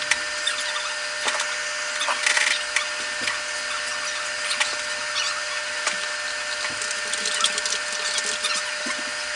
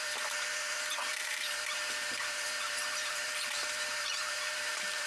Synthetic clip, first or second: second